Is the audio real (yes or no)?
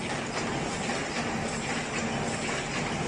yes